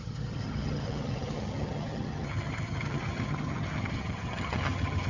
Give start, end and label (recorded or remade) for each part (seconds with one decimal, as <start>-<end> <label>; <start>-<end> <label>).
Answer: 0.0-5.1 remade